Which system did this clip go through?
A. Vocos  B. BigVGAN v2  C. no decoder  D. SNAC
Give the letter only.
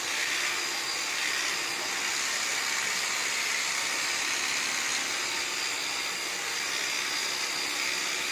C